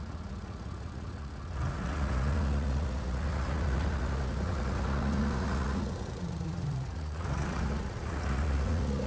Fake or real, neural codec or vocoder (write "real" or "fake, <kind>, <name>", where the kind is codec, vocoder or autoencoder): fake, vocoder, Vocos